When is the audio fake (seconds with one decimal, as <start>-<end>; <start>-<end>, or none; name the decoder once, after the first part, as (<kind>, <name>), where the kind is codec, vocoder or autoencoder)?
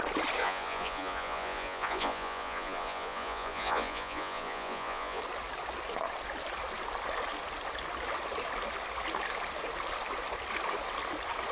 0.4-5.2 (vocoder, Vocos)